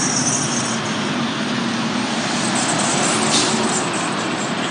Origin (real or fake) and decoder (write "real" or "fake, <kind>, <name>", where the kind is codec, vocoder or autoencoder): real